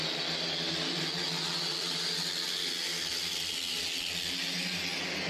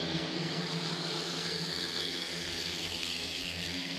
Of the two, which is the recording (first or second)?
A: first